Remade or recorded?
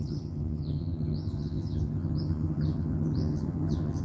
remade